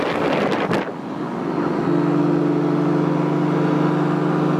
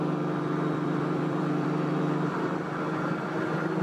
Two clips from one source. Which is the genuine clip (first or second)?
first